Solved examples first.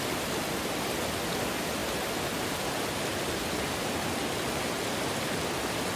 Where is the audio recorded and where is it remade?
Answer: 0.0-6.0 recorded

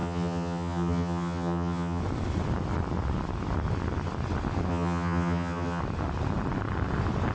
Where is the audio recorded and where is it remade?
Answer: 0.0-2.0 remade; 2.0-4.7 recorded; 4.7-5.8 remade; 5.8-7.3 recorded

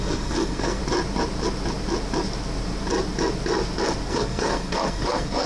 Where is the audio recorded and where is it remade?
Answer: 0.0-0.8 remade; 0.8-4.1 recorded; 4.1-5.5 remade

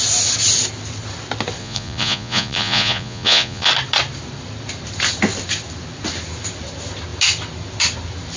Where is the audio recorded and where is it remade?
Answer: 0.0-1.6 recorded; 1.6-3.7 remade; 3.7-8.4 recorded

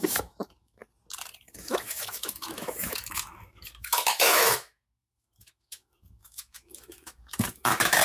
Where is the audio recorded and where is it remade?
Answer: 0.0-0.8 remade; 0.8-1.4 recorded; 1.4-8.0 remade